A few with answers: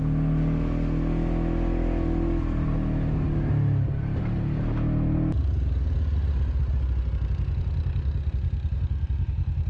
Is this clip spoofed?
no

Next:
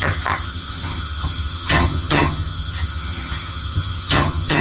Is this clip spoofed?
yes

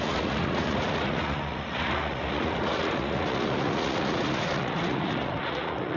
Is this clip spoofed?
yes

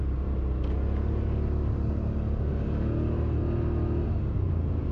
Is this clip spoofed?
no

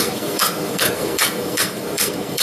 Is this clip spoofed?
yes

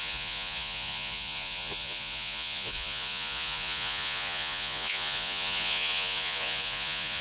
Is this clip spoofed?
yes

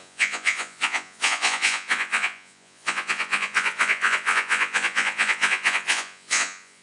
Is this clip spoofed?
yes